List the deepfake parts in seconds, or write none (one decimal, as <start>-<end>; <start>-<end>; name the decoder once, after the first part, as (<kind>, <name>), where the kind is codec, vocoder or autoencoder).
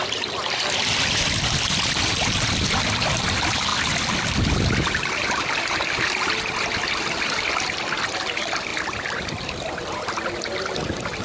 none